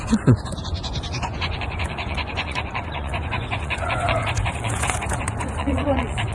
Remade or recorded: remade